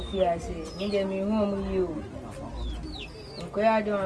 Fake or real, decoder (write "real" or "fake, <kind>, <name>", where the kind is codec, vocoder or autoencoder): real